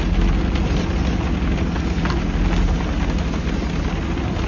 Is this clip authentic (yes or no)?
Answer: yes